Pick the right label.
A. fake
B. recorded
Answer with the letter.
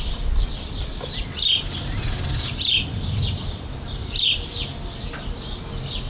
B